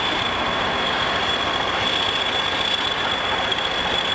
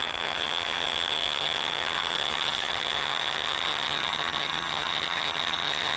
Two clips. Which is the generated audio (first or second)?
second